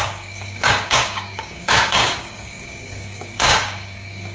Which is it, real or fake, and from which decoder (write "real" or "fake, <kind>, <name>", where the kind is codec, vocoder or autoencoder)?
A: fake, codec, DAC